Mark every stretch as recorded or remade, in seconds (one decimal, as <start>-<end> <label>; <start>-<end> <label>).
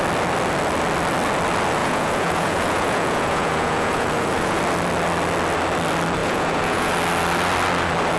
0.0-1.8 recorded; 1.8-4.6 remade; 4.6-6.2 recorded; 6.2-6.9 remade; 6.9-8.2 recorded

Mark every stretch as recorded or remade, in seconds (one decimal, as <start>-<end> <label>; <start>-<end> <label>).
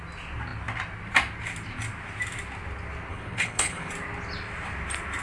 0.0-3.1 recorded; 3.1-3.9 remade; 3.9-5.2 recorded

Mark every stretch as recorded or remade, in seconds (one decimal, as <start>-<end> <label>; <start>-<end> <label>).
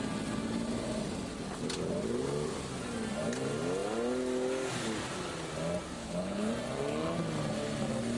0.0-6.0 recorded; 6.0-6.5 remade; 6.5-8.2 recorded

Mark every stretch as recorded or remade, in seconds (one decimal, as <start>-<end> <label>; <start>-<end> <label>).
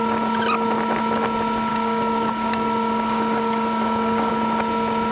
0.0-1.7 recorded; 1.7-4.3 remade; 4.3-5.1 recorded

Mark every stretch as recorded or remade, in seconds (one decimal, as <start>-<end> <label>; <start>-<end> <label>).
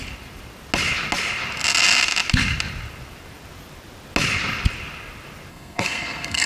0.0-5.5 recorded; 5.5-6.5 remade